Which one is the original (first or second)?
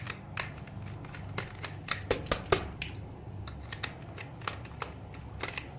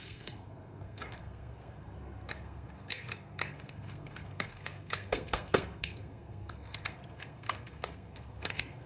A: first